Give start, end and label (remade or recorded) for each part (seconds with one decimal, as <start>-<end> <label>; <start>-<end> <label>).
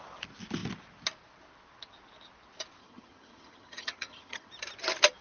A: 0.0-2.8 recorded; 2.8-4.5 remade; 4.5-5.2 recorded